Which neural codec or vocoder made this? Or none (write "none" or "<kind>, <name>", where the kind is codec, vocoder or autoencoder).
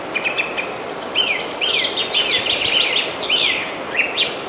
none